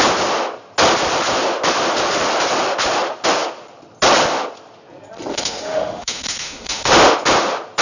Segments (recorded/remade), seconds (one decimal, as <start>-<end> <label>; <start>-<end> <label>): 0.0-5.3 recorded; 5.3-6.9 remade; 6.9-7.8 recorded